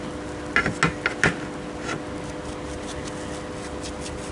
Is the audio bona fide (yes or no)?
yes